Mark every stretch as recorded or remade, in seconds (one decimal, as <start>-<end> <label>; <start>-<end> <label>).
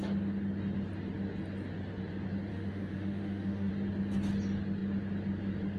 0.0-2.5 recorded; 2.5-3.7 remade; 3.7-5.8 recorded